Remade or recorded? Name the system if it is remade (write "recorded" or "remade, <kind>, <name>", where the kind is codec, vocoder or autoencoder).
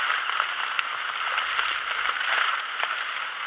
recorded